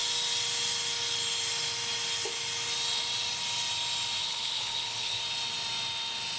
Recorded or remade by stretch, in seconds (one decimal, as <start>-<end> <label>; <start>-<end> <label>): 0.0-4.2 recorded; 4.2-5.2 remade; 5.2-6.4 recorded